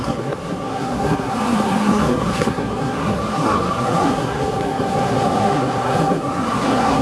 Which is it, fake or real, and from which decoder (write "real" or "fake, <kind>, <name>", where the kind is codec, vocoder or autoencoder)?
fake, codec, SNAC